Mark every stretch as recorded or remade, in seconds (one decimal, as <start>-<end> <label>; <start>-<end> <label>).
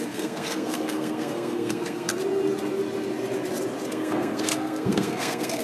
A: 0.0-2.1 remade; 2.1-3.9 recorded; 3.9-5.6 remade